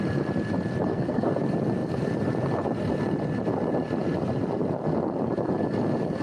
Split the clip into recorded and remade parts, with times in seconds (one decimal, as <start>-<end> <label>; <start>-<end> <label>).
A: 0.0-0.9 recorded; 0.9-1.4 remade; 1.4-6.2 recorded